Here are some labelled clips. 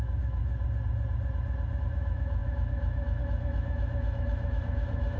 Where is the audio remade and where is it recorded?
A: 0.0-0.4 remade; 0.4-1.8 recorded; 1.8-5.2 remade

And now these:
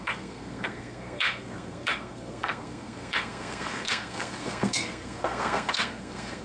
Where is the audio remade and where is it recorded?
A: 0.0-6.4 remade

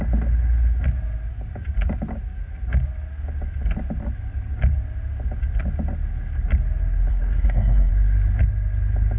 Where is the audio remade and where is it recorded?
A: 0.0-7.1 recorded; 7.1-7.9 remade; 7.9-9.2 recorded